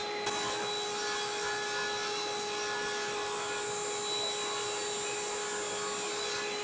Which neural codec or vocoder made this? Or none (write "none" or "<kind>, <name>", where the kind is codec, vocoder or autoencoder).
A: none